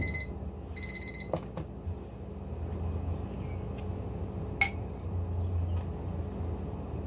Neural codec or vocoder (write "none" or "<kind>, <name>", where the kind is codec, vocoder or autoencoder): none